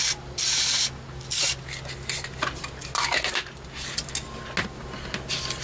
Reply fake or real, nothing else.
real